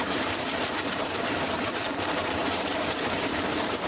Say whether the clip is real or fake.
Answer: fake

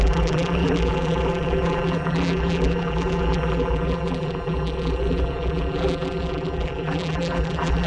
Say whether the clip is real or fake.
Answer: fake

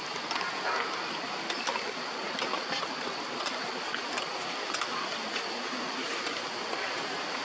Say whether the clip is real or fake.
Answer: real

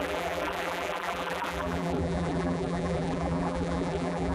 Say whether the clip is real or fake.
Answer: fake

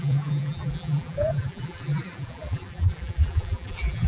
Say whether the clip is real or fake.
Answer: fake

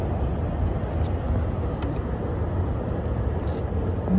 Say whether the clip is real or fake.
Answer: real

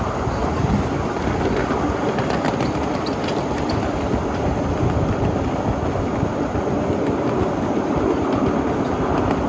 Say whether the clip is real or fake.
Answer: real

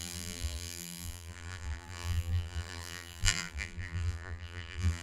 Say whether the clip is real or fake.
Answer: fake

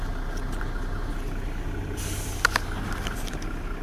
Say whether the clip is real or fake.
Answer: real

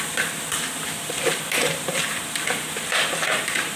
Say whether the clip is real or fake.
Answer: fake